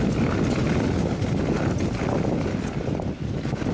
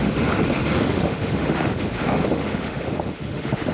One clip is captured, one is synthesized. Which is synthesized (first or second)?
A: second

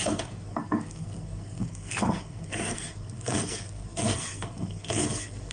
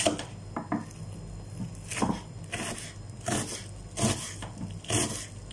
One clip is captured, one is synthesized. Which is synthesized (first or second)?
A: first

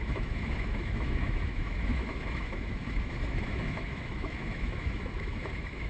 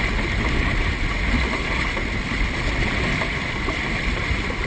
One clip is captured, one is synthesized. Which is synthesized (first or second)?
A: first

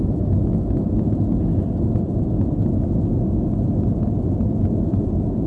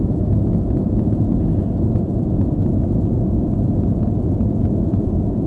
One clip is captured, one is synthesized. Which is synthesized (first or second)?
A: second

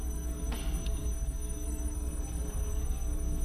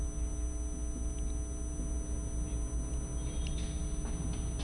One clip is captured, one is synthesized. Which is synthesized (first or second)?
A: first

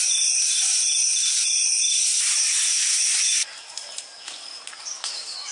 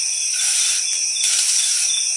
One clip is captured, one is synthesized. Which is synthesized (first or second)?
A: first